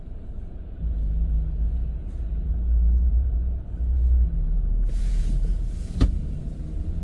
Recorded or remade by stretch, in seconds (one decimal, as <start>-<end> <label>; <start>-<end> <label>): 0.0-7.0 remade